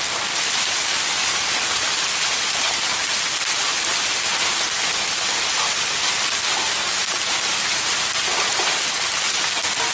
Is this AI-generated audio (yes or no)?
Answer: no